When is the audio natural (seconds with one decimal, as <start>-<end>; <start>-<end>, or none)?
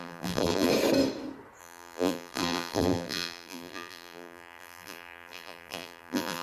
0.7-1.6